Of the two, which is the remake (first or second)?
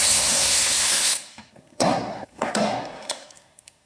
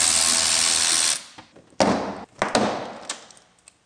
first